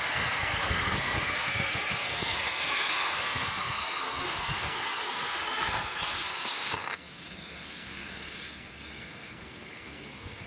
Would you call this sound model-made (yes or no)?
yes